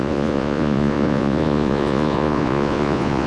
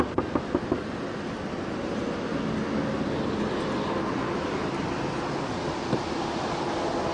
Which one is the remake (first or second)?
first